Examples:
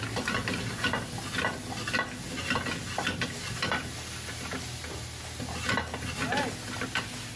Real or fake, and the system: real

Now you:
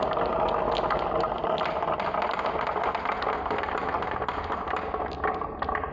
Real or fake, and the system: real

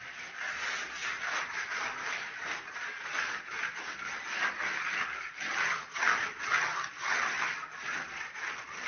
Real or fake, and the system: real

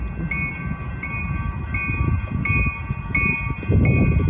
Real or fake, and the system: real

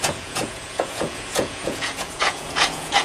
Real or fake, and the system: fake, vocoder, Vocos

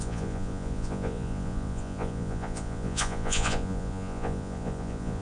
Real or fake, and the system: fake, vocoder, Vocos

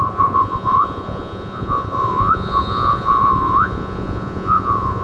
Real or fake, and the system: fake, vocoder, Vocos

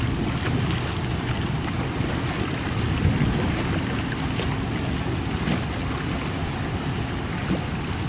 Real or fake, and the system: real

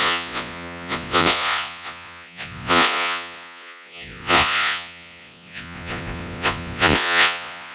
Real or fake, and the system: fake, vocoder, Vocos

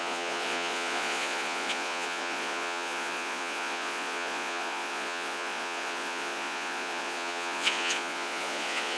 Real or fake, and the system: fake, vocoder, Vocos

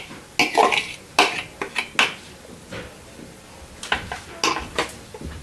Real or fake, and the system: real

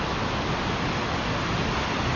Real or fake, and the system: real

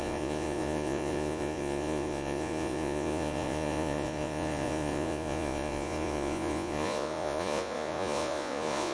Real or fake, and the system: fake, vocoder, Vocos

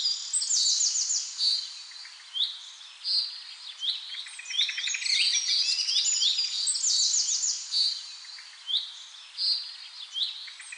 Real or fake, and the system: real